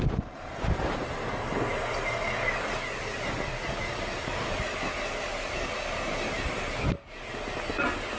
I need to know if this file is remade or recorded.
recorded